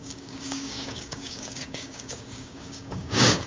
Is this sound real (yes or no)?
no